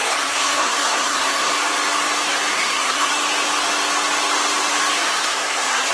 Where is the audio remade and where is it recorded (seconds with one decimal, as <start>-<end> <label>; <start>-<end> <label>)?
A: 0.0-1.5 remade; 1.5-2.5 recorded; 2.5-3.1 remade; 3.1-5.2 recorded; 5.2-5.9 remade